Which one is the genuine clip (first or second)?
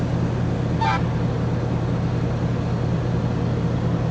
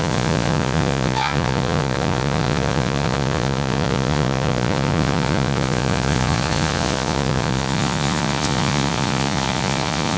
first